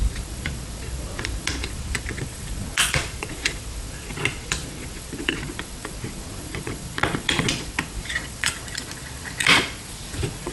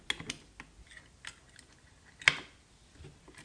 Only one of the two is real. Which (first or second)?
second